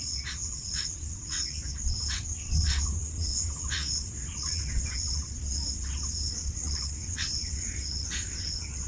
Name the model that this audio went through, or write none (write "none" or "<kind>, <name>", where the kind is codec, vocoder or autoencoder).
vocoder, WaveNeXt